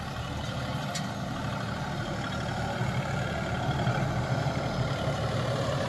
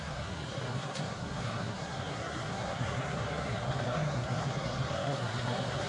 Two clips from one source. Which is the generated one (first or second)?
second